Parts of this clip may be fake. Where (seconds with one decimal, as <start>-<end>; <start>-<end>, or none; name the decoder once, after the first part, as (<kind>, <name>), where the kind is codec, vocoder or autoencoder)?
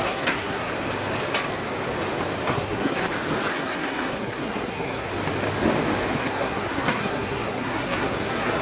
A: 0.0-0.7 (codec, SNAC); 2.5-3.0; 3.5-5.1; 6.2-8.6